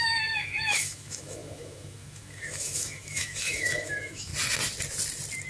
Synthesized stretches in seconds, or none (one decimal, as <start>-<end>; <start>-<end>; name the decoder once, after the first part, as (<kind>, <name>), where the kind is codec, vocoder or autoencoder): 0.0-4.3 (autoencoder, DAC-VAE)